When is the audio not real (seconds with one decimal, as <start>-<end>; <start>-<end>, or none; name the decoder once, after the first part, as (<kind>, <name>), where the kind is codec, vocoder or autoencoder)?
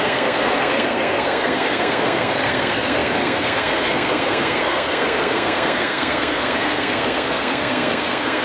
0.0-8.4 (codec, SNAC)